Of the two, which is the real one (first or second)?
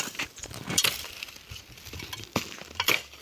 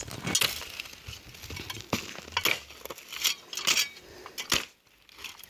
second